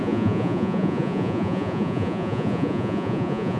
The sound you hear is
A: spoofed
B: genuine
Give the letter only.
A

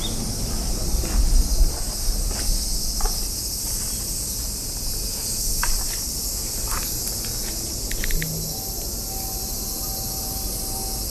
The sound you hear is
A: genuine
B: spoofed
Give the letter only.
A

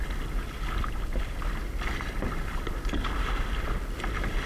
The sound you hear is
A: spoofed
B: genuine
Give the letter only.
B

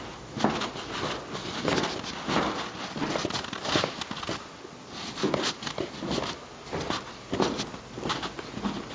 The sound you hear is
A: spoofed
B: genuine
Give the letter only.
B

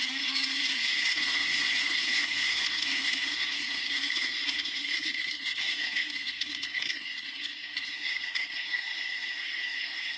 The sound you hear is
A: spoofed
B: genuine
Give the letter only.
A